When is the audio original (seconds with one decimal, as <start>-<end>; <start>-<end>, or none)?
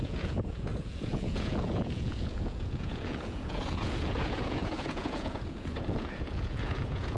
none